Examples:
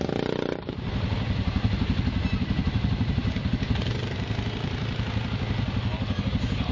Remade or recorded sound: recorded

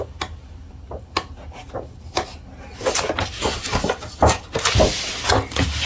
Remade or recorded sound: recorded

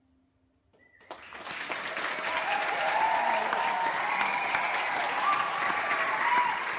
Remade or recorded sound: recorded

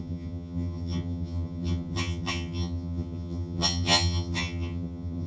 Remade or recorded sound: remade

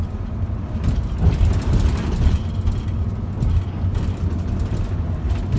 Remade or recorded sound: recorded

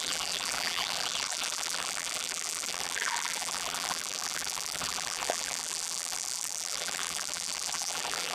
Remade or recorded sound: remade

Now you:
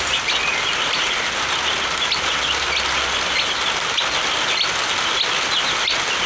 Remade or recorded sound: recorded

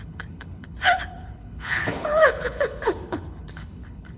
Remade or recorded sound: remade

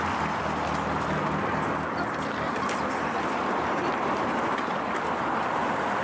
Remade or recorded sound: recorded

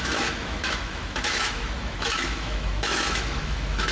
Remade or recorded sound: remade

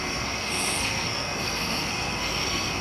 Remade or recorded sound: remade